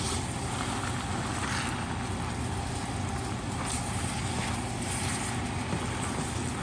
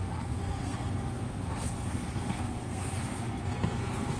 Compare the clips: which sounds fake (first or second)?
second